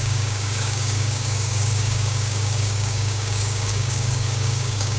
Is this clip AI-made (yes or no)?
yes